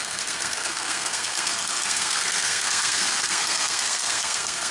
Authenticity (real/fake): fake